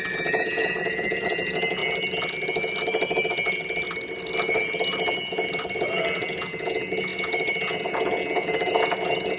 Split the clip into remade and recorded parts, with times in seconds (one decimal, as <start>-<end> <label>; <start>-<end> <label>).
0.0-1.8 remade; 1.8-5.7 recorded; 5.7-9.4 remade